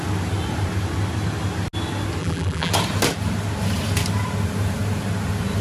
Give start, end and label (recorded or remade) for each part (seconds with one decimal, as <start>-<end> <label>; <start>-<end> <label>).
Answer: 0.0-2.2 recorded; 2.2-2.7 remade; 2.7-5.6 recorded